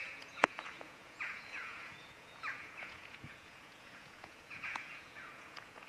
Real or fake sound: fake